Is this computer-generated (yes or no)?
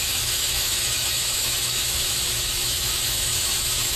yes